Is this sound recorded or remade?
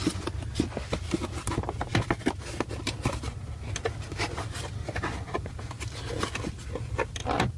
recorded